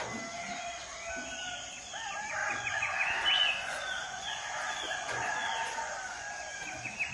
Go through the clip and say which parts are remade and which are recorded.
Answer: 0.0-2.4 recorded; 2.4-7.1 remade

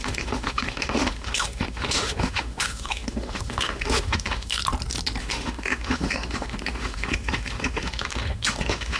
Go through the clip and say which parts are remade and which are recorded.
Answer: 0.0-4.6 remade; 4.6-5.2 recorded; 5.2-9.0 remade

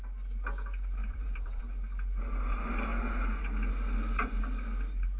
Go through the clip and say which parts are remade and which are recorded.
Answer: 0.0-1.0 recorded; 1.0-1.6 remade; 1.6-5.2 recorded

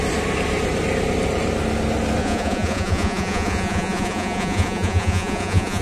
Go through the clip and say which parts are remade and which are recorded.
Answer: 0.0-2.2 recorded; 2.2-5.8 remade